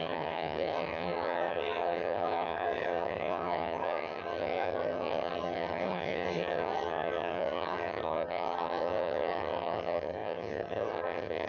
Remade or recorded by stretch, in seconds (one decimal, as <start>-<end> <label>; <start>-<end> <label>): 0.0-11.5 remade